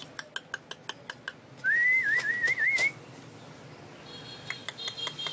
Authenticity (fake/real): real